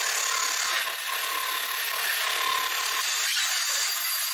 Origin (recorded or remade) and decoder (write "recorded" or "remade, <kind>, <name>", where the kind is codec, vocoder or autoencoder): recorded